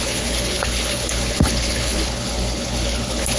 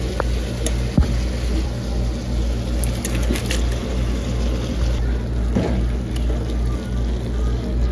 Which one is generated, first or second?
first